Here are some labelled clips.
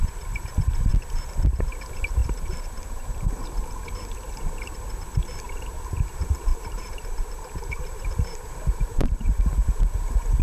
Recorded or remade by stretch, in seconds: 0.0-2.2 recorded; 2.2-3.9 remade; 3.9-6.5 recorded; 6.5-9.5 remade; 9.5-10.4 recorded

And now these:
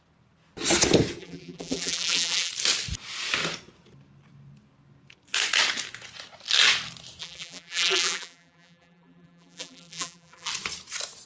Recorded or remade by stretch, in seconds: 0.0-1.2 recorded; 1.2-2.5 remade; 2.5-7.2 recorded; 7.2-10.5 remade; 10.5-11.2 recorded